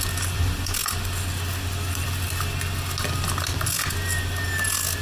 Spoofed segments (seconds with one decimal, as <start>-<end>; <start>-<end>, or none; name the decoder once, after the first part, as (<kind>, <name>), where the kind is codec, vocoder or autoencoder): none

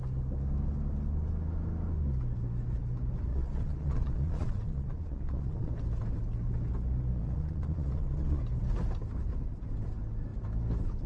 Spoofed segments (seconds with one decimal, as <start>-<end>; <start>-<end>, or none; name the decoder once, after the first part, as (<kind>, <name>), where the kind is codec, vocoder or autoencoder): 3.3-5.7 (vocoder, Vocos); 7.1-8.4

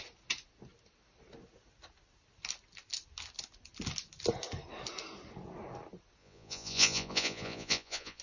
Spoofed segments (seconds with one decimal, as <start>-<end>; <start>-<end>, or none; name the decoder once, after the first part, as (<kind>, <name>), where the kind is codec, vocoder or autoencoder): 6.2-8.2 (vocoder, Vocos)

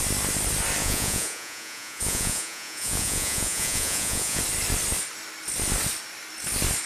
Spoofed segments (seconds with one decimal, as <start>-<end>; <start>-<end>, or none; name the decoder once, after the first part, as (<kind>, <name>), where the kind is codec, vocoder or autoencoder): 0.8-4.4 (vocoder, Vocos)

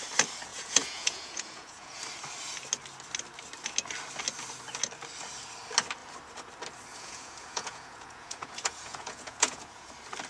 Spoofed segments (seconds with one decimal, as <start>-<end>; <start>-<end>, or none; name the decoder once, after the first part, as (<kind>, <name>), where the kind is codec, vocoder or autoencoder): 0.5-2.0 (vocoder, Vocos); 6.9-9.9